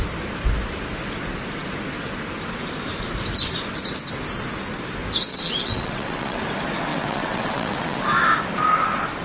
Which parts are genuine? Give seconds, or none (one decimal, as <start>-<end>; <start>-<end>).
0.0-5.3; 6.4-6.9; 8.0-9.2